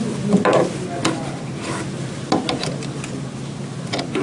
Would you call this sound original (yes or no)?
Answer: yes